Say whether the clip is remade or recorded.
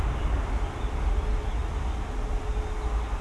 recorded